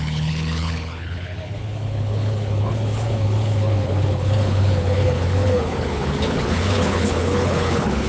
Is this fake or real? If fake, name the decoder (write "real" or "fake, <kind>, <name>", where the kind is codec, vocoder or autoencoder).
fake, codec, HILCodec